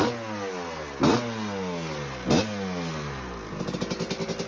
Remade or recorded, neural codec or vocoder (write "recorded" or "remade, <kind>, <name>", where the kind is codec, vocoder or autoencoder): recorded